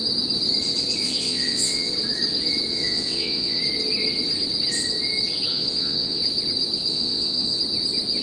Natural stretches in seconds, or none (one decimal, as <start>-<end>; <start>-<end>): 0.0-1.0; 1.9-2.7; 3.6-5.5; 6.2-6.9; 7.6-8.2